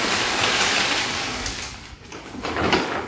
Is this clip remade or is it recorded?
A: remade